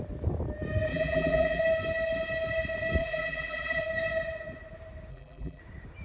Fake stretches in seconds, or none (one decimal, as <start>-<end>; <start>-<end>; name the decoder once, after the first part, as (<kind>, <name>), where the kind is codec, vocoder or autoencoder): 0.9-1.6 (vocoder, BigVGAN v2); 3.0-3.8; 5.1-5.6